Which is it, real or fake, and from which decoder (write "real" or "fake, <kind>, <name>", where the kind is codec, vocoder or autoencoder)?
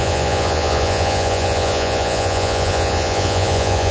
fake, vocoder, Vocos